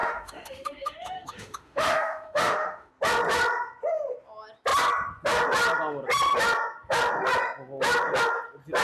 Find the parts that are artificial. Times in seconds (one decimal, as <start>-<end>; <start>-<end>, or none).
0.0-2.9